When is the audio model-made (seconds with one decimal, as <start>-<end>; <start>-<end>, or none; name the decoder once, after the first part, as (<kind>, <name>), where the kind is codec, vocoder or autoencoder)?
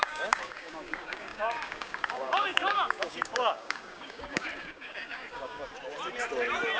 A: 0.0-5.6 (codec, DAC)